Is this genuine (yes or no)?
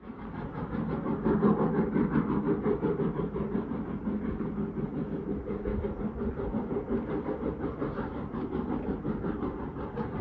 yes